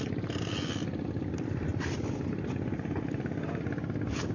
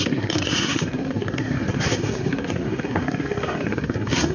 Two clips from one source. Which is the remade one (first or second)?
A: second